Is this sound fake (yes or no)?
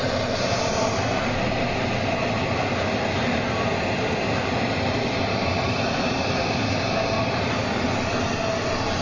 no